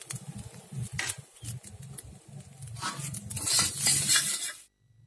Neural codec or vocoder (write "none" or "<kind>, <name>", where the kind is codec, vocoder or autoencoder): none